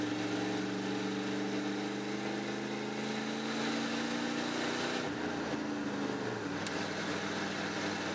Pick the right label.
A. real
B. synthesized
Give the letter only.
A